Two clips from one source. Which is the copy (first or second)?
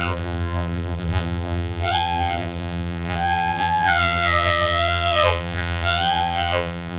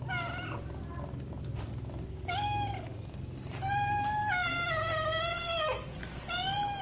first